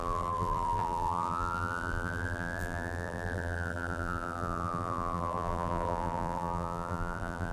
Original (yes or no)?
no